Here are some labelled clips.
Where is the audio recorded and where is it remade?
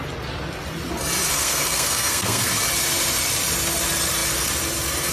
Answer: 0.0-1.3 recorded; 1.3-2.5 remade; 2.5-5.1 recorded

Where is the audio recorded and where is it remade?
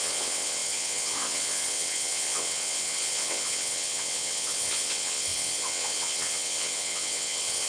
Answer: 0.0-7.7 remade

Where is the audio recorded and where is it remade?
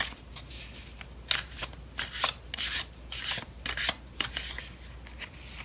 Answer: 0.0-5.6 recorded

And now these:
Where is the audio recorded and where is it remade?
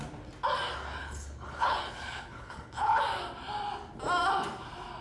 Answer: 0.0-1.0 recorded; 1.0-3.0 remade; 3.0-5.0 recorded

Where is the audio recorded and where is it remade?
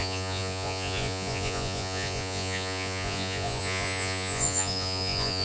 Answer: 0.0-5.4 remade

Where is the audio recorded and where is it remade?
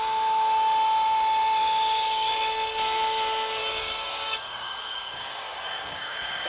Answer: 0.0-1.6 recorded; 1.6-2.3 remade; 2.3-3.6 recorded; 3.6-6.5 remade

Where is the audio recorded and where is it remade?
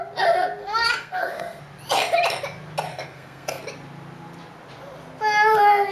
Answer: 0.0-0.6 recorded; 0.6-1.6 remade; 1.6-2.9 recorded; 2.9-3.6 remade; 3.6-5.9 recorded